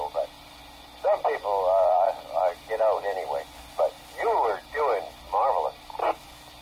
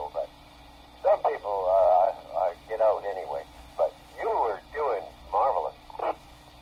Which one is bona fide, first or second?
first